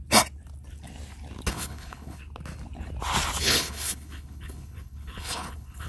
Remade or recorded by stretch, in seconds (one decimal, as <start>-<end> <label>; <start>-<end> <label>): 0.0-1.5 recorded; 1.5-2.2 remade; 2.2-3.4 recorded; 3.4-5.9 remade